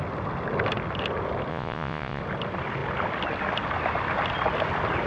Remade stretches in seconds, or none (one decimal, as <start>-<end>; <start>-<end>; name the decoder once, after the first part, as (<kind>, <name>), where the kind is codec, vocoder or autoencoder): 1.5-2.2 (vocoder, Vocos)